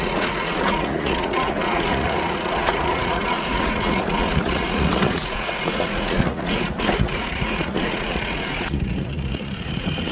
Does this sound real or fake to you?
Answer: fake